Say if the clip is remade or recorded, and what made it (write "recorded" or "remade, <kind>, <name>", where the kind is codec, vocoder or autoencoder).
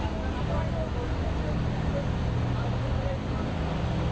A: recorded